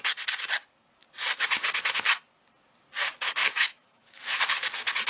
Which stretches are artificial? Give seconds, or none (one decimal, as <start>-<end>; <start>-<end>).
3.4-4.4